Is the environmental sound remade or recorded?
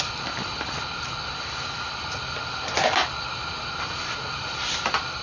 recorded